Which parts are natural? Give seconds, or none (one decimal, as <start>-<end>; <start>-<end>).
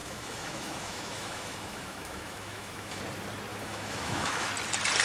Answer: 3.0-3.5; 4.5-5.0